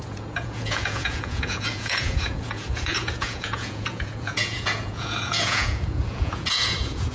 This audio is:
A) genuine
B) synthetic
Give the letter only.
B